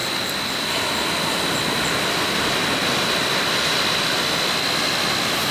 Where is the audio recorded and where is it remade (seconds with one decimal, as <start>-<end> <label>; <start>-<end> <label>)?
0.0-0.6 remade; 0.6-5.5 recorded